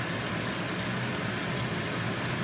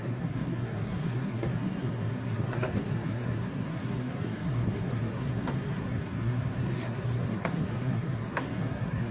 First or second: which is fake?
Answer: second